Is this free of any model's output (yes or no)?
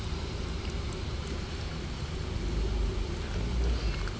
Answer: yes